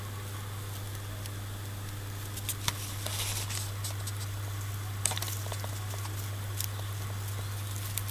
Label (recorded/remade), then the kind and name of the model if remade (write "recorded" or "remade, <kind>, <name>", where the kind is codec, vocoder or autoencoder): recorded